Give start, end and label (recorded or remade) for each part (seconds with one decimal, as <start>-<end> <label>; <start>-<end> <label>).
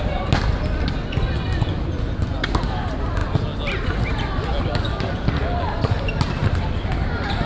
0.0-7.5 recorded